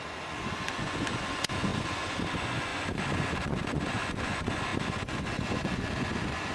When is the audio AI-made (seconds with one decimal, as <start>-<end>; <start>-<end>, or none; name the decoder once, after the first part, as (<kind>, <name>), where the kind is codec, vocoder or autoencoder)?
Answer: 0.0-6.5 (vocoder, Vocos)